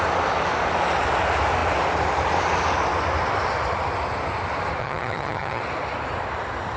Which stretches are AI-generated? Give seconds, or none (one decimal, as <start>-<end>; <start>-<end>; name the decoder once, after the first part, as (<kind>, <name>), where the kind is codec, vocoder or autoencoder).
4.8-5.6 (vocoder, HiFi-GAN)